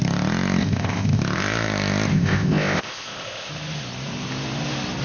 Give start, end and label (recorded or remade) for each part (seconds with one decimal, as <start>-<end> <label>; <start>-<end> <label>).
0.0-0.6 recorded; 0.6-1.2 remade; 1.2-2.1 recorded; 2.1-3.5 remade; 3.5-5.0 recorded